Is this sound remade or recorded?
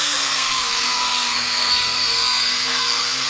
remade